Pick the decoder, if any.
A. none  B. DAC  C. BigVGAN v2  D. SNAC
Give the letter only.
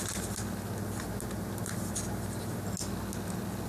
A